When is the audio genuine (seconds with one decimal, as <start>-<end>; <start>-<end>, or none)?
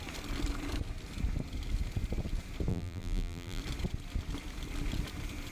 0.0-2.7; 3.6-5.5